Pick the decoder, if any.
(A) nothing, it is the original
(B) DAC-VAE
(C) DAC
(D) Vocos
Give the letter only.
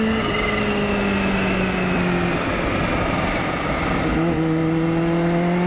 A